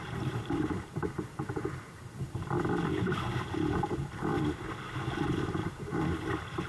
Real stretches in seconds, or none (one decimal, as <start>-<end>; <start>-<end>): 4.3-5.2